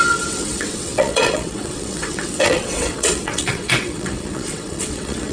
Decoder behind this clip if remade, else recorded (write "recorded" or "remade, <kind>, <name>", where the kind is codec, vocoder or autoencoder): remade, vocoder, WaveNeXt